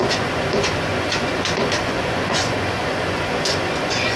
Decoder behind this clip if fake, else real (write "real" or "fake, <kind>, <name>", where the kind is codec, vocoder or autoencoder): fake, vocoder, Vocos